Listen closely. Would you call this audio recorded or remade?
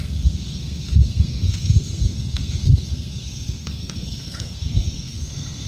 remade